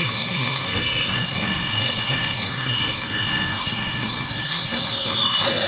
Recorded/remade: remade